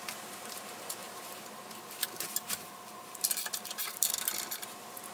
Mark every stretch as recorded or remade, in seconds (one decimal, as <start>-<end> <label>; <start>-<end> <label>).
0.0-1.0 recorded; 1.0-4.1 remade; 4.1-5.1 recorded